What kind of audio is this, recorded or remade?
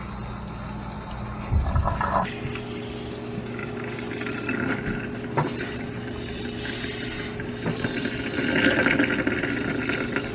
recorded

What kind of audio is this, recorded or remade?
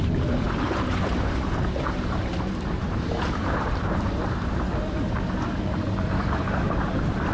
remade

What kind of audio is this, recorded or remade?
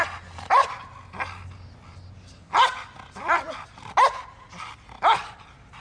recorded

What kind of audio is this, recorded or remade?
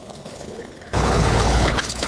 remade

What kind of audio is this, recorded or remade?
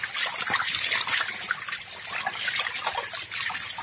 recorded